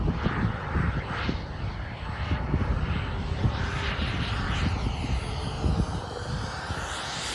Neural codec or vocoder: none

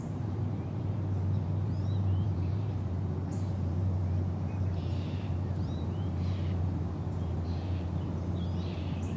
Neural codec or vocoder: vocoder, BigVGAN v2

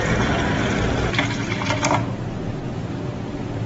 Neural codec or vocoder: vocoder, BigVGAN v2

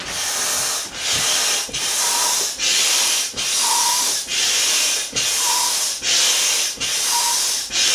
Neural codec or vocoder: none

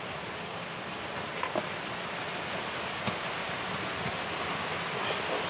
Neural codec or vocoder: none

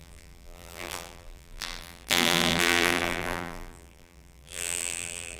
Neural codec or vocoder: vocoder, BigVGAN v2